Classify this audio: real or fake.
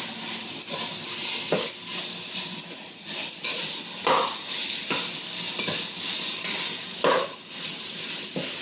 real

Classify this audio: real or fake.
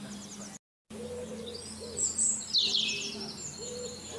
real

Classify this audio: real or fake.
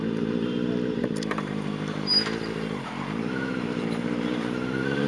fake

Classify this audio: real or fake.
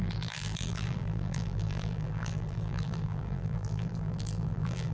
fake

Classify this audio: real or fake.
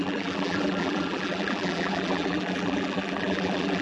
fake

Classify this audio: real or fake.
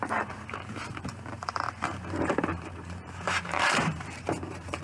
fake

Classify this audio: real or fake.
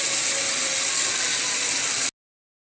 real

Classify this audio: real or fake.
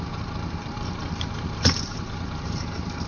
fake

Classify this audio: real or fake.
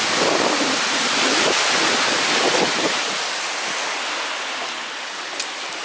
real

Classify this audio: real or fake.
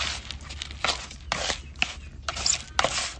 real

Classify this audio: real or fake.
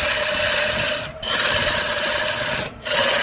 real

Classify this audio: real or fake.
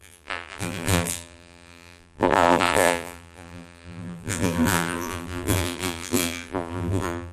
fake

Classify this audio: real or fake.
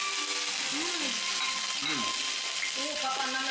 real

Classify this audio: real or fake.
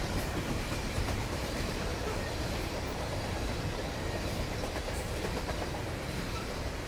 fake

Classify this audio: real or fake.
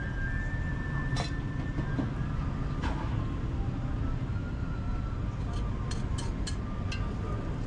real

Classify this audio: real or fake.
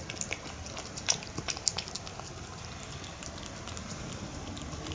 real